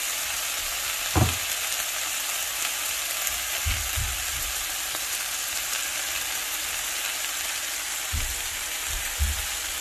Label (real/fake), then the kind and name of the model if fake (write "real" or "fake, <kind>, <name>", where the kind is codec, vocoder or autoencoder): real